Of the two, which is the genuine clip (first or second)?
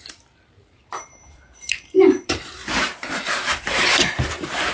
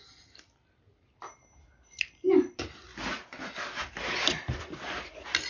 second